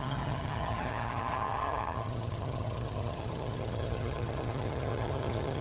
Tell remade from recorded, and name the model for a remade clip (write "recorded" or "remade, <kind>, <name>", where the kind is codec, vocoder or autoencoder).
remade, vocoder, HiFi-GAN